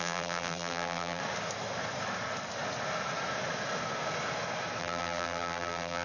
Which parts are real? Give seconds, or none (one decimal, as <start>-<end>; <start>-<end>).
1.2-4.8